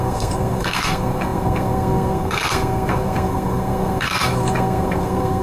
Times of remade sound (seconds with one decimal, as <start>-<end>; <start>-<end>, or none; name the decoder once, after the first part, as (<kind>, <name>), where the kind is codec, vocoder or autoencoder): 0.0-5.4 (codec, SNAC)